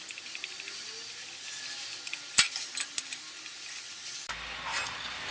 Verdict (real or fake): real